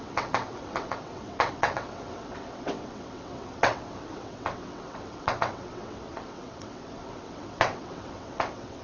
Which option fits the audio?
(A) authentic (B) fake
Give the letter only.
B